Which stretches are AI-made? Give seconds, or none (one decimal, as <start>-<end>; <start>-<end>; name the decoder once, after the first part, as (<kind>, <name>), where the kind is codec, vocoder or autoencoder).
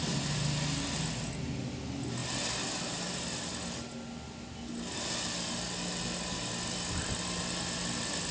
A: none